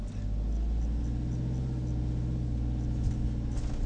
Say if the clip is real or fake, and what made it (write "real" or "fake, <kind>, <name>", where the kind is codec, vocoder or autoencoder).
real